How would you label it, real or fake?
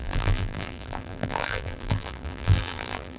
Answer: fake